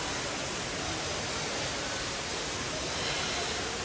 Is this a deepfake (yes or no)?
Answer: no